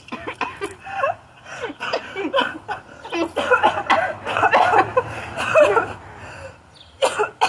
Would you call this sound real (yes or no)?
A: yes